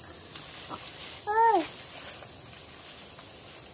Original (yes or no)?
yes